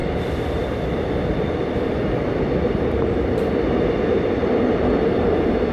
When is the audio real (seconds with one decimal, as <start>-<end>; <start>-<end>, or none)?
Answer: 3.4-4.4; 5.1-5.7